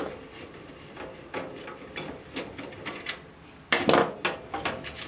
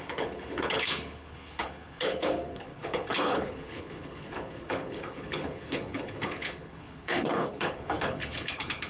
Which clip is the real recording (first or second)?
first